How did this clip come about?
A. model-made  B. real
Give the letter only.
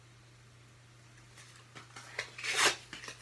B